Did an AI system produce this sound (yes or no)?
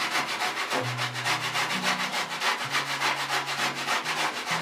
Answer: no